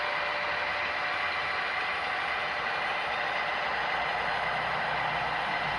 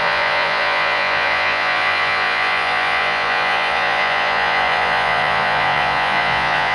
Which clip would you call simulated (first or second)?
second